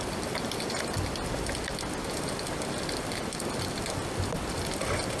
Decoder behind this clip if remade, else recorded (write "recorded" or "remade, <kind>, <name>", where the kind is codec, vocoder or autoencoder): recorded